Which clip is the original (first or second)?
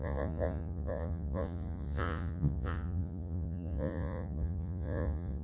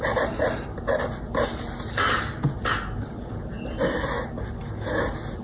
second